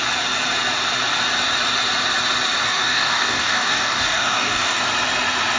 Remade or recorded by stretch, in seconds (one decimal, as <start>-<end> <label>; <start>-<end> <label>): 0.0-2.6 recorded; 2.6-4.8 remade; 4.8-5.6 recorded